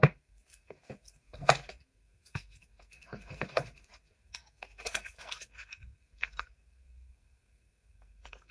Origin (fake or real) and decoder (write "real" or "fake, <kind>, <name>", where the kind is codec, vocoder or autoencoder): fake, codec, SNAC